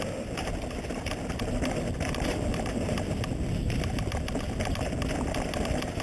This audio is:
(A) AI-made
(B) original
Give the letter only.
B